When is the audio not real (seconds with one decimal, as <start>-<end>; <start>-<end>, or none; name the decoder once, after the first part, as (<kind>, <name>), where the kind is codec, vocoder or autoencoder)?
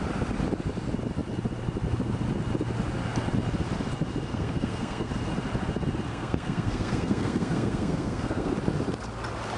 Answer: 4.3-5.1 (codec, SNAC); 6.1-8.5